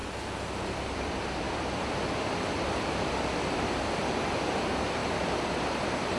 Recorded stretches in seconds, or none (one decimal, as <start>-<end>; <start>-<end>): none